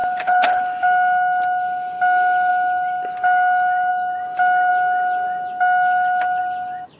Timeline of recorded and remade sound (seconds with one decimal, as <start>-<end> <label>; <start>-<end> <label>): 0.0-0.6 remade; 0.6-7.0 recorded